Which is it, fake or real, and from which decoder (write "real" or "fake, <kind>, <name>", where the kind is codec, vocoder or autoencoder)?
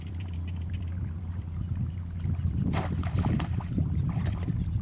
fake, vocoder, BigVGAN v2